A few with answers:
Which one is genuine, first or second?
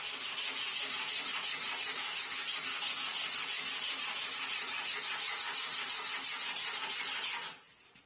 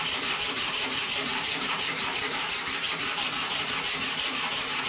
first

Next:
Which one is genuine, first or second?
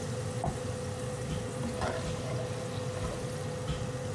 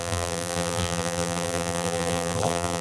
first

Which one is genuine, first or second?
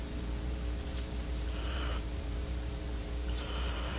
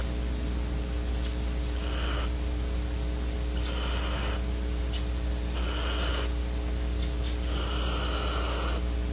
second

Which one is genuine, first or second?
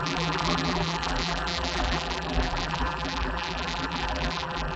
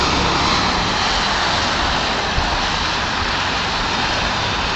second